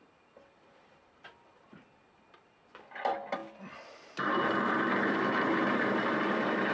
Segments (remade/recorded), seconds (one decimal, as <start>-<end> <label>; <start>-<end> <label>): 0.0-6.7 recorded

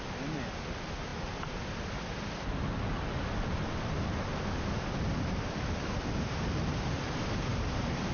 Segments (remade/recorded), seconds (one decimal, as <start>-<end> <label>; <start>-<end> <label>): 0.0-7.5 recorded; 7.5-8.1 remade

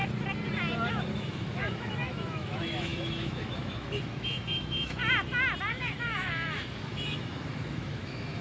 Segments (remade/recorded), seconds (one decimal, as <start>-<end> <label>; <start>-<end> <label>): 0.0-0.9 recorded; 0.9-5.0 remade; 5.0-5.7 recorded; 5.7-8.4 remade

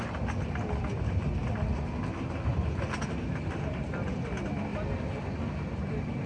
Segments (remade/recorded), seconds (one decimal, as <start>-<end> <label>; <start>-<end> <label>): 0.0-6.3 recorded

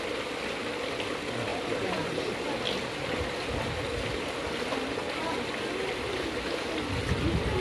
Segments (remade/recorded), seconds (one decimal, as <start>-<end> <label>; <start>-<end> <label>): 0.0-1.5 recorded; 1.5-2.2 remade; 2.2-7.6 recorded

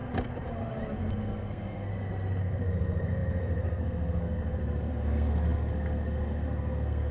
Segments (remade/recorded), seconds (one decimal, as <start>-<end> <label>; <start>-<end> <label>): 0.0-1.1 recorded; 1.1-1.9 remade; 1.9-2.4 recorded; 2.4-7.1 remade

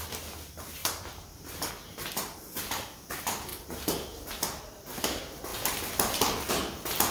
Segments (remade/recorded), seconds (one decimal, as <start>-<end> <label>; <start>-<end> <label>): 0.0-0.8 recorded; 0.8-1.7 remade; 1.7-3.5 recorded; 3.5-4.3 remade; 4.3-7.1 recorded

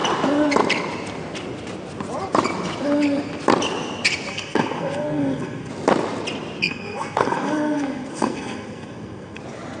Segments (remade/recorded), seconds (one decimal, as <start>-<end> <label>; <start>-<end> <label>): 0.0-4.3 recorded; 4.3-5.7 remade; 5.7-6.6 recorded; 6.6-9.4 remade; 9.4-9.8 recorded